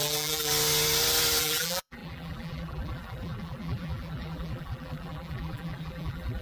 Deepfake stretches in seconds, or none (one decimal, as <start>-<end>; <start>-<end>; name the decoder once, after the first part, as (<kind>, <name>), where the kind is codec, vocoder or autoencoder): 0.0-0.5 (vocoder, BigVGAN v2); 1.4-6.4